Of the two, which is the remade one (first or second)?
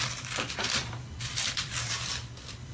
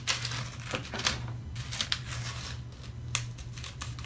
first